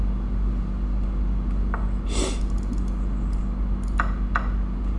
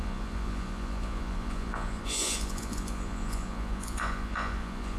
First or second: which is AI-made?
second